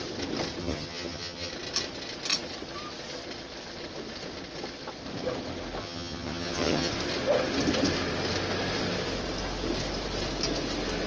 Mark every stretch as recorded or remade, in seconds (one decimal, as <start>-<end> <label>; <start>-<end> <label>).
0.0-0.6 recorded; 0.6-1.5 remade; 1.5-5.8 recorded; 5.8-6.9 remade; 6.9-11.1 recorded